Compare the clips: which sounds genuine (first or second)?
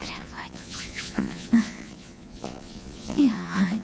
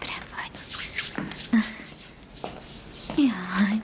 second